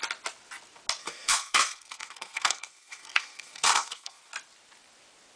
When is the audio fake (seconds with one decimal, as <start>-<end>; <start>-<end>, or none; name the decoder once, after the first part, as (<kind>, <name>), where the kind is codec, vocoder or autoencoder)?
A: 1.0-4.2 (codec, SNAC)